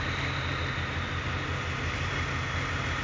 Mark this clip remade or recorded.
recorded